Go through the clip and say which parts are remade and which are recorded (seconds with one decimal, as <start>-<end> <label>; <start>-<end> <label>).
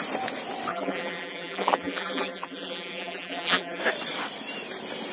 0.0-0.7 recorded; 0.7-3.8 remade; 3.8-5.1 recorded